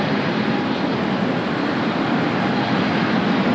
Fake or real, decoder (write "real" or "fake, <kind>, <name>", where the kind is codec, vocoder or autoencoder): real